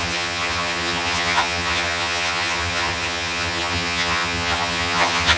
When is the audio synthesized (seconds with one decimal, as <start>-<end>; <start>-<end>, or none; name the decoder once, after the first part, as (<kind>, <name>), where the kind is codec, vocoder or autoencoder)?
0.0-5.4 (vocoder, HiFi-GAN)